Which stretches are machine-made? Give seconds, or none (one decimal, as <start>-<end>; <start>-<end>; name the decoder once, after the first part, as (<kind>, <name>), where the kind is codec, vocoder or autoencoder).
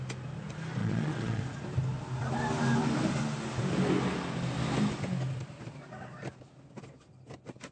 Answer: 0.8-1.4 (vocoder, Vocos)